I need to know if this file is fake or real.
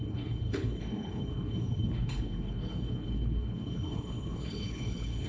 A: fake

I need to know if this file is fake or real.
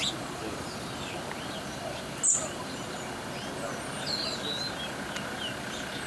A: real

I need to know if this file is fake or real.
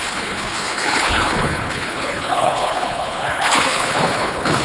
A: fake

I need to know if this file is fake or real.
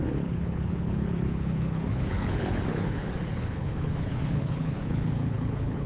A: fake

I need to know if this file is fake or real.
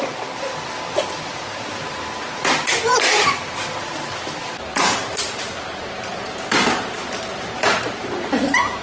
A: real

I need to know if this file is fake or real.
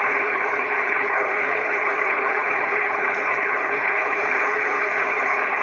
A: fake